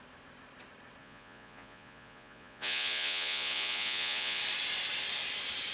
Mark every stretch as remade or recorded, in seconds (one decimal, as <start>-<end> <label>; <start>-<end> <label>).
0.0-1.0 recorded; 1.0-4.4 remade; 4.4-5.7 recorded